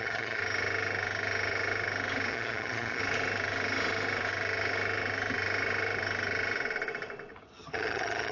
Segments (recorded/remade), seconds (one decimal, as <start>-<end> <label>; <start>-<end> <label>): 0.0-0.4 remade; 0.4-2.3 recorded; 2.3-3.0 remade; 3.0-7.3 recorded; 7.3-8.3 remade